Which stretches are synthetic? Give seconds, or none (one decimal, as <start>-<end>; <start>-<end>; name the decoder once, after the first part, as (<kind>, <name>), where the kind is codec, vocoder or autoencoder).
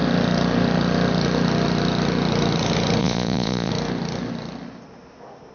3.0-3.7 (vocoder, Vocos)